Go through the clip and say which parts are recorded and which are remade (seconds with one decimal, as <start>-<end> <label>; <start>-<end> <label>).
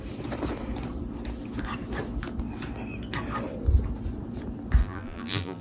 0.0-4.8 recorded; 4.8-5.6 remade